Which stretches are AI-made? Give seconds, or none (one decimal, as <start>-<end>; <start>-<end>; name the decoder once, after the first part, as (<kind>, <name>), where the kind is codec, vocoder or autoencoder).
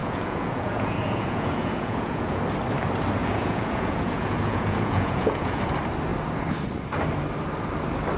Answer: 0.0-2.4 (vocoder, Vocos); 3.2-5.6